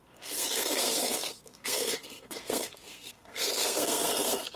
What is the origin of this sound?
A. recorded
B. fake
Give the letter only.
B